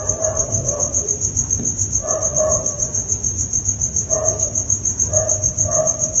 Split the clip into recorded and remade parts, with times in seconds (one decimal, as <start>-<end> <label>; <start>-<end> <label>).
0.0-0.4 recorded; 0.4-0.9 remade; 0.9-2.5 recorded; 2.5-3.6 remade; 3.6-6.2 recorded